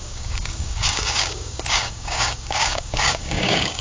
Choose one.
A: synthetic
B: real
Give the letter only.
A